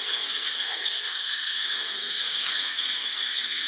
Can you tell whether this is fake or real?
fake